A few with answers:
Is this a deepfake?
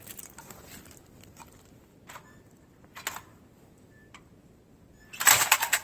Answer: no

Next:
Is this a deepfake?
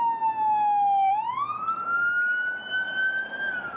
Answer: no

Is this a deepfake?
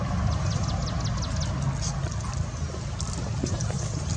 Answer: no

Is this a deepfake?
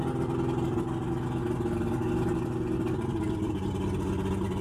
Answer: no